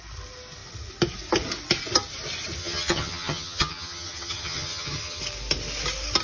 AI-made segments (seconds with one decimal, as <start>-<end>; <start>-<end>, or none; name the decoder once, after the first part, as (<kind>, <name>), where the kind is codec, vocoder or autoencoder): 2.6-5.2 (vocoder, HiFi-GAN)